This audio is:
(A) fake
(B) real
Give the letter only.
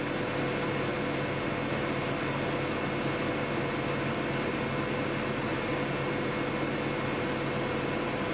B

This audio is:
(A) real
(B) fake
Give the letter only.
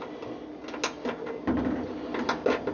A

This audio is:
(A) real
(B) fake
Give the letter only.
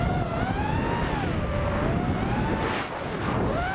A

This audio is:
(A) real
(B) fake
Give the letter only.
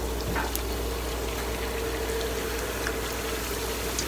A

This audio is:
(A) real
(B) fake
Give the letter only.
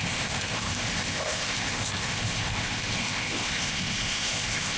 B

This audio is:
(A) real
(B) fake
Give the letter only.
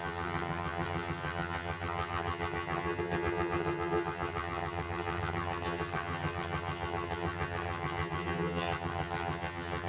B